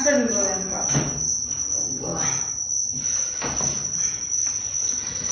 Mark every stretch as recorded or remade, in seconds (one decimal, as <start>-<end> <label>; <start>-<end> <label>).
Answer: 0.0-5.3 recorded